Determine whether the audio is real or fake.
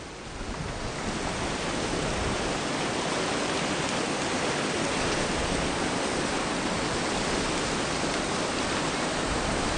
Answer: real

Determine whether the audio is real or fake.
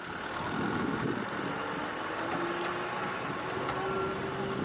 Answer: real